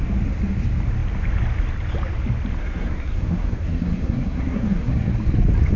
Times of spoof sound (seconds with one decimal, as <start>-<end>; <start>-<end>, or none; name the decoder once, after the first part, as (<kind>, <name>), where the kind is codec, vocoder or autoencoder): 2.6-5.1 (codec, SNAC)